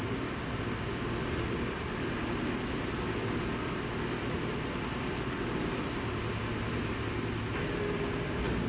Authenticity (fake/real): real